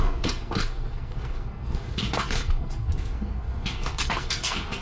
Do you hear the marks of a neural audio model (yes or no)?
yes